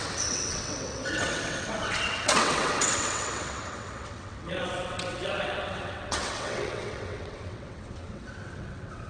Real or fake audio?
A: fake